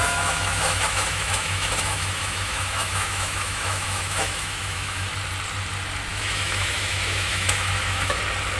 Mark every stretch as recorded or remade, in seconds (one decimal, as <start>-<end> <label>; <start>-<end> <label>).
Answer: 0.0-5.1 remade; 5.1-6.1 recorded; 6.1-8.2 remade; 8.2-8.6 recorded